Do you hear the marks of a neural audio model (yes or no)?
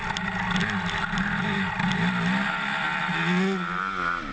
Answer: no